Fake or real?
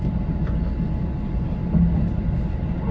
real